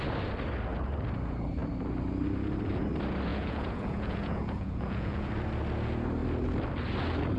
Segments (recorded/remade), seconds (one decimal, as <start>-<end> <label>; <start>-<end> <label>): 0.0-3.3 recorded; 3.3-5.3 remade; 5.3-7.4 recorded